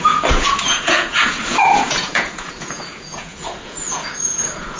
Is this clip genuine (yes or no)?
no